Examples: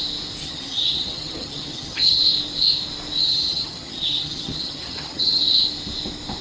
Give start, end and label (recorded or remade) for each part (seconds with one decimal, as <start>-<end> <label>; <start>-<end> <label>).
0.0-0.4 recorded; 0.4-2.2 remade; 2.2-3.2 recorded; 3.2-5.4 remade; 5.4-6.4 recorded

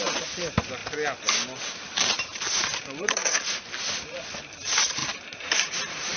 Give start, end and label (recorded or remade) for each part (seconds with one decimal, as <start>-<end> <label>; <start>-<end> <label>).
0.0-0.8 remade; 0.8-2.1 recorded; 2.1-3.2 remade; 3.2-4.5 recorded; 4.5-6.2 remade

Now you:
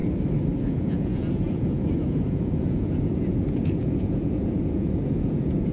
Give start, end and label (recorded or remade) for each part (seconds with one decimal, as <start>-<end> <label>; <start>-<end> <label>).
0.0-0.6 recorded; 0.6-5.7 remade

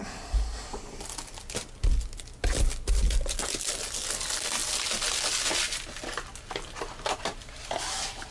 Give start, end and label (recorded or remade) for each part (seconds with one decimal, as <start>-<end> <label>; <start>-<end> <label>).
0.0-8.3 recorded